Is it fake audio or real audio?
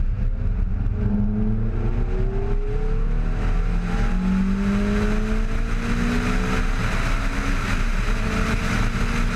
real